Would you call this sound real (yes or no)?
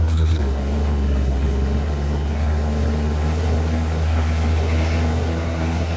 no